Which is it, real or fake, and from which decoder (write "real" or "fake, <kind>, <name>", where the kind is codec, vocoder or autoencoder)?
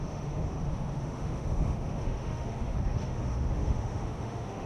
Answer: fake, autoencoder, DAC-VAE